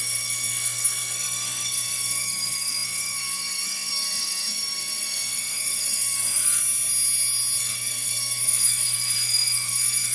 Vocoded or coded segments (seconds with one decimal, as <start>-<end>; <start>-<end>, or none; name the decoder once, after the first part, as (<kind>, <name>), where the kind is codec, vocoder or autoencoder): 0.0-6.6 (codec, SNAC); 7.6-10.1